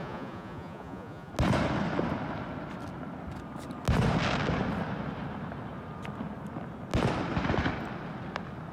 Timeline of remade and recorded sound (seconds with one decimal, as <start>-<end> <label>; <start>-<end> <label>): 0.0-1.3 remade; 1.3-8.7 recorded